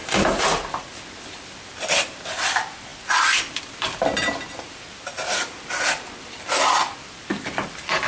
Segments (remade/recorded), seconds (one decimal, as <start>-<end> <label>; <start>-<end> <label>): 0.0-8.1 recorded